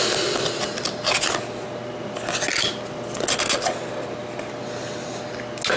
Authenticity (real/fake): real